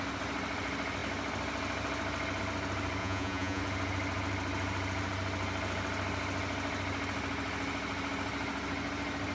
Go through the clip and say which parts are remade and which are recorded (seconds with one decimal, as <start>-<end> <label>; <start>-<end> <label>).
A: 0.0-3.0 recorded; 3.0-3.6 remade; 3.6-9.3 recorded